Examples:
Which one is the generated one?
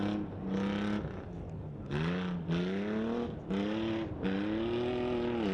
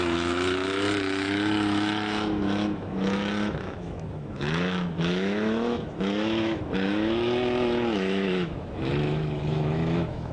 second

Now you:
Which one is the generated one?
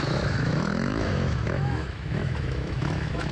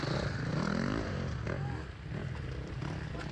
first